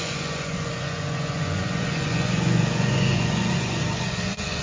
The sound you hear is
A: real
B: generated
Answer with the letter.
B